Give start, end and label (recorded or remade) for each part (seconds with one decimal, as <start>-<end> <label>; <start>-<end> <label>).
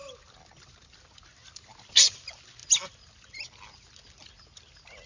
0.0-5.1 recorded